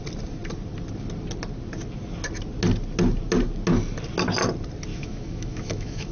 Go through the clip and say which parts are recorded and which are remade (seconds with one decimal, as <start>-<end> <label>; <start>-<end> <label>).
0.0-4.9 recorded; 4.9-6.1 remade